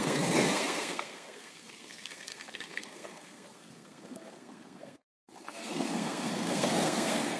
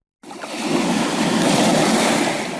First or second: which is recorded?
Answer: second